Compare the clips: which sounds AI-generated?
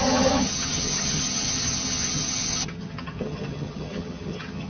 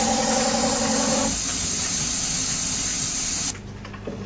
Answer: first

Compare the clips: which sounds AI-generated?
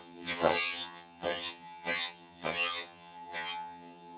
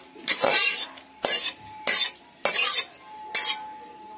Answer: first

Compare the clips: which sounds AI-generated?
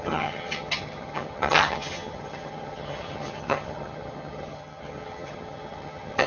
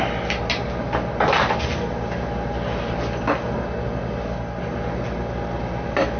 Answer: first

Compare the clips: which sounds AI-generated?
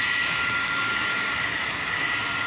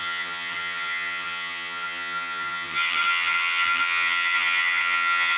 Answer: second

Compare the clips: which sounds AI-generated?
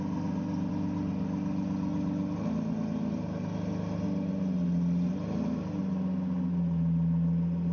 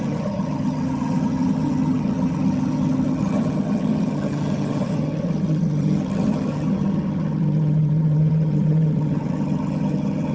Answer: second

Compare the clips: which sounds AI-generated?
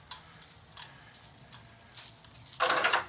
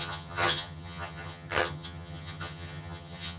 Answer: second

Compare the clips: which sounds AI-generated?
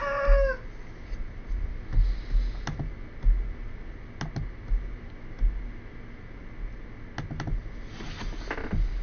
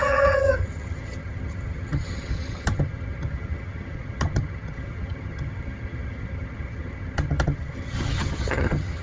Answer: second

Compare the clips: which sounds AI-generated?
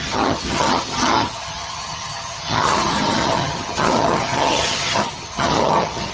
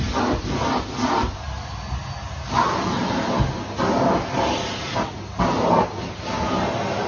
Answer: first